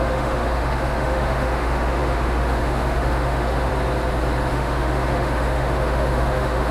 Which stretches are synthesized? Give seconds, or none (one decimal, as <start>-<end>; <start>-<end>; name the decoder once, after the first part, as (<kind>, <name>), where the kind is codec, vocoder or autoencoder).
0.0-3.7 (autoencoder, DAC-VAE); 4.5-6.7